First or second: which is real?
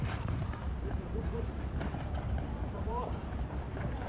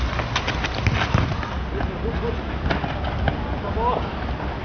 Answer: second